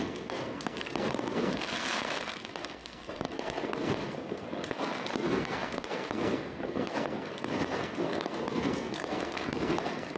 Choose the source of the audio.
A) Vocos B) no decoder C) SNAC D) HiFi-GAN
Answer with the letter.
C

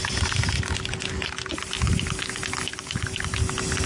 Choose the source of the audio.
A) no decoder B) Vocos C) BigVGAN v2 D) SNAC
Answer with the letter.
A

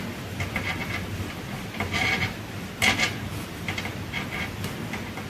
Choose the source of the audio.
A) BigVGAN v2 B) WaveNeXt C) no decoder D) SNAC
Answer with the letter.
C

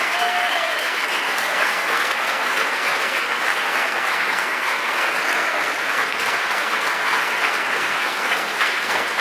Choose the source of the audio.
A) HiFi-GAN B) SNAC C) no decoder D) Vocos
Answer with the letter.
B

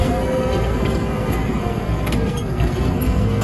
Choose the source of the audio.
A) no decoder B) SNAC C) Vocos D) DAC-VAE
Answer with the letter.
B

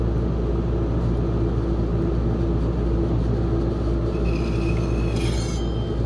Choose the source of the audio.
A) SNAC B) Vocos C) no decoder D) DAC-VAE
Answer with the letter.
C